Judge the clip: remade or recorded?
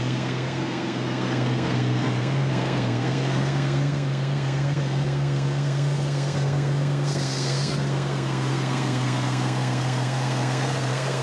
remade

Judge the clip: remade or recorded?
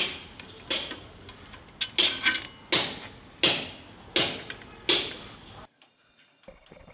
recorded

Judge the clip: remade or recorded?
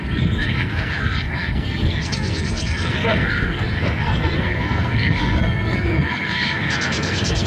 remade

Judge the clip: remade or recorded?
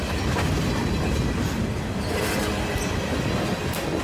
recorded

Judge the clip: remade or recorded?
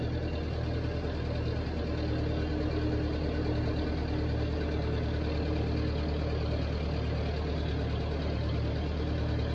recorded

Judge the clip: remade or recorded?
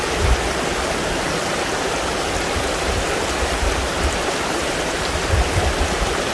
recorded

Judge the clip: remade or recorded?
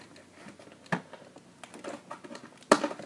recorded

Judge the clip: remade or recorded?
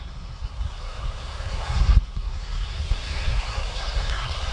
remade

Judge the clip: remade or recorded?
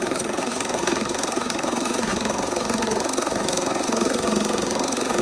remade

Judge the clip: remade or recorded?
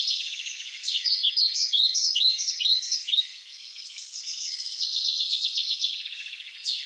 remade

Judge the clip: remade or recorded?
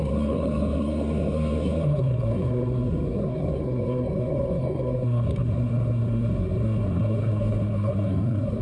remade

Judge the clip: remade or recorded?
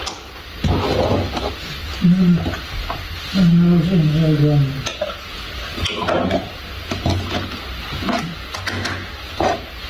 recorded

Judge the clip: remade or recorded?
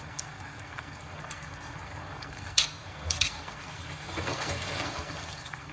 remade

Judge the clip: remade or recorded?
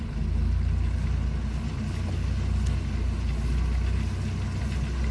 recorded